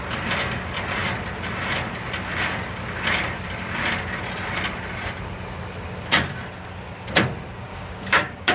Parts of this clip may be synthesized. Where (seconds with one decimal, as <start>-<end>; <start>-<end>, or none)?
7.7-8.5